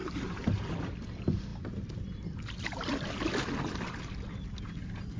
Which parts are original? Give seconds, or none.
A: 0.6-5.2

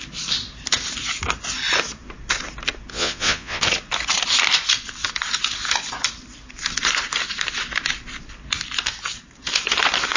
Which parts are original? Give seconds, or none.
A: 0.0-2.9; 3.6-10.2

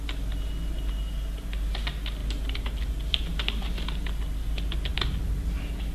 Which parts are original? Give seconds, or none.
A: 0.0-5.9